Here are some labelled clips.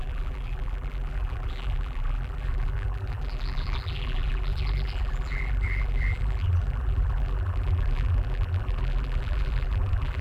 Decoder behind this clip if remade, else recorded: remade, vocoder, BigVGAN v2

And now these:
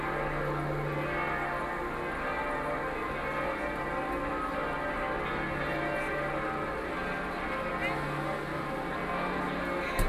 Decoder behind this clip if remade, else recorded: recorded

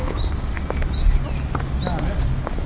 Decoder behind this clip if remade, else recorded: recorded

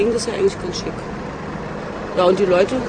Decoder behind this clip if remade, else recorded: recorded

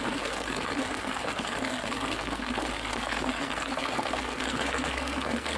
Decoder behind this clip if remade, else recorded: remade, codec, SNAC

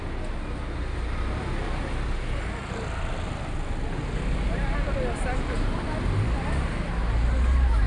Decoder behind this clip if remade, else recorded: recorded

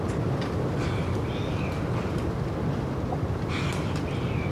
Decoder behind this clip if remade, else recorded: recorded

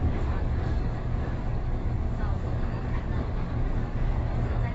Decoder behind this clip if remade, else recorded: remade, codec, DAC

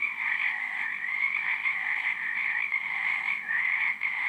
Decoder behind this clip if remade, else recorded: remade, autoencoder, DAC-VAE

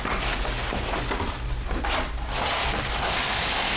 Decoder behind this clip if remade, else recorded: recorded